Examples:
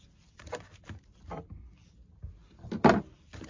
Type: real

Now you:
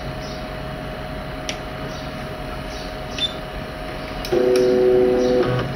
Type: real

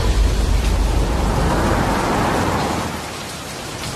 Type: fake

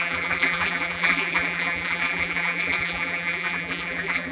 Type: fake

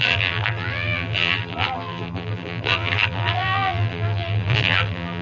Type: fake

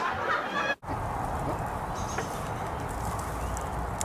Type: real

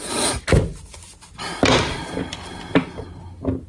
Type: real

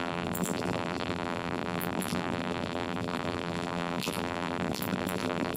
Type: fake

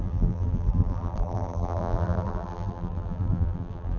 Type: fake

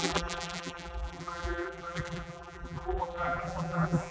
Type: fake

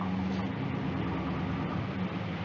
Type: real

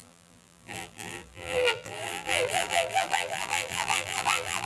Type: fake